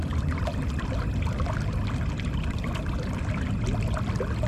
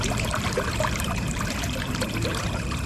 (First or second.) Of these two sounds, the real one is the first